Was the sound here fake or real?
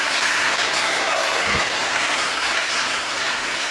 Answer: fake